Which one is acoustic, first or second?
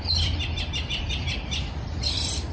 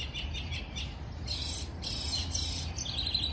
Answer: second